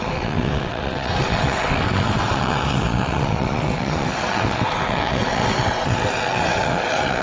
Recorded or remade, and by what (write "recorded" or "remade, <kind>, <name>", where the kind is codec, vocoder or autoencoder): remade, vocoder, WaveNeXt